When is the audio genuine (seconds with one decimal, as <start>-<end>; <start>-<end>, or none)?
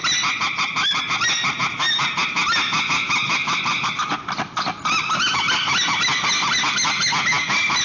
0.0-7.8